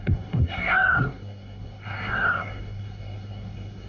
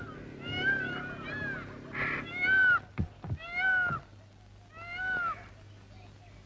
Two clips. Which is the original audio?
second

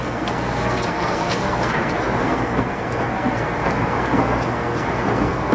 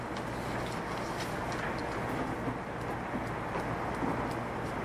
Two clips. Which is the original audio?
second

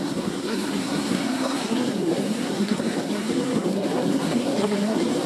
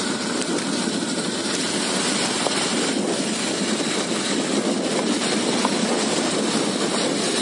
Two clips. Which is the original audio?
second